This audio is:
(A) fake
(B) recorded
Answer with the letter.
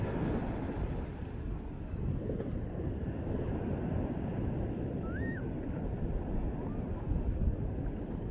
B